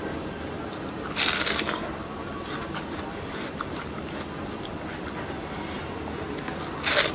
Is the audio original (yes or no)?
yes